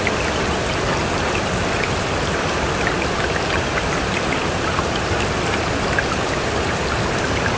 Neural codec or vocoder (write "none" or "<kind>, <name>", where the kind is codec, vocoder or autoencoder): none